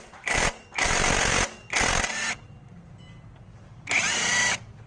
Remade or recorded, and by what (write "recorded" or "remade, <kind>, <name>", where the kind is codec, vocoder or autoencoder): recorded